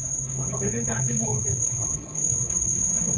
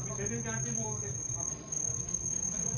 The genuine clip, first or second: second